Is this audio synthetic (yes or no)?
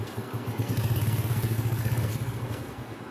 yes